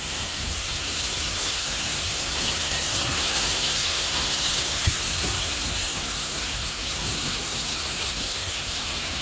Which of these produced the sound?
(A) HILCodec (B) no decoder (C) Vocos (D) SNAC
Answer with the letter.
D